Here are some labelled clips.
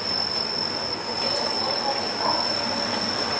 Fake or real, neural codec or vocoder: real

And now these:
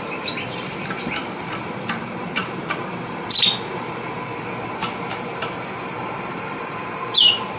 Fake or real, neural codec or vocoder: fake, vocoder, BigVGAN v2